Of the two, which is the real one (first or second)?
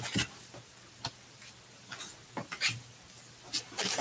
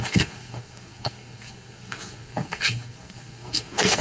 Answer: first